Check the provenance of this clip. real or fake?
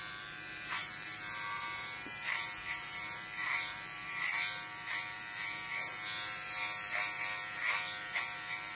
fake